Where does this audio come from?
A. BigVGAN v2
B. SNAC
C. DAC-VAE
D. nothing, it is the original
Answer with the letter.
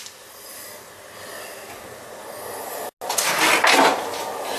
D